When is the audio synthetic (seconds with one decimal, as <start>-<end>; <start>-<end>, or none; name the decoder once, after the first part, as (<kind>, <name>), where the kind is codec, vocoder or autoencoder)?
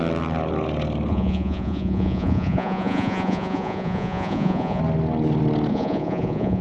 1.1-4.8 (vocoder, Vocos); 5.7-6.6